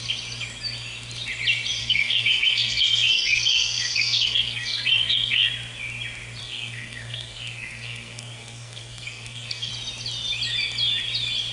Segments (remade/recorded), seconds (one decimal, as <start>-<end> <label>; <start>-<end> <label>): 0.0-1.8 recorded; 1.8-5.5 remade; 5.5-6.4 recorded; 6.4-9.7 remade; 9.7-11.5 recorded